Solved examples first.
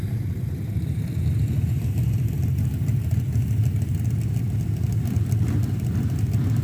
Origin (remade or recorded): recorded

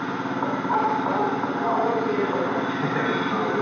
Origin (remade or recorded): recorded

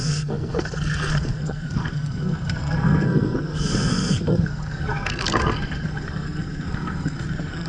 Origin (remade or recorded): remade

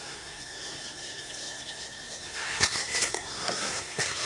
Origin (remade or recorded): remade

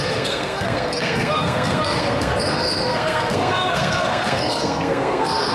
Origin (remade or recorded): remade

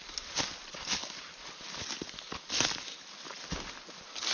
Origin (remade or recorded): recorded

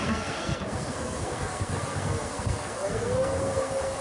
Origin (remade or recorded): remade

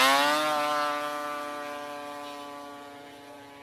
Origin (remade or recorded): recorded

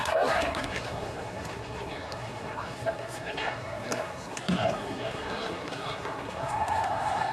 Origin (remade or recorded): remade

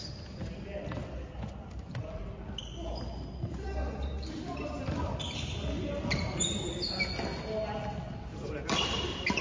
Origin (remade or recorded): recorded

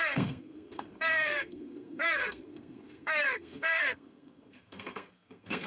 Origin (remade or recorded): remade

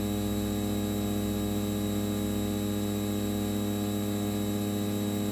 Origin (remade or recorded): recorded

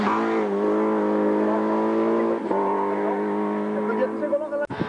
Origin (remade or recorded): recorded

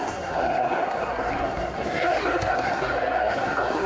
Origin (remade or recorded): remade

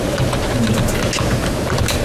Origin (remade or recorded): recorded